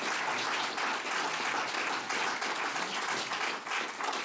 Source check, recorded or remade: recorded